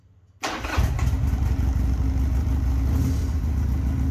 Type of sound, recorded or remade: recorded